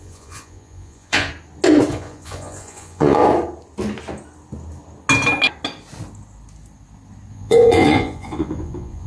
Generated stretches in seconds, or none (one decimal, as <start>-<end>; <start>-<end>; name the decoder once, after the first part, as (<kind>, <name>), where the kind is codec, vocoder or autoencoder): 0.0-1.3 (vocoder, Vocos); 1.9-3.2; 7.3-9.1